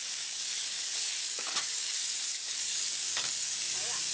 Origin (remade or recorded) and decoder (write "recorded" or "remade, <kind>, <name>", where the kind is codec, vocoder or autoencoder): remade, codec, DAC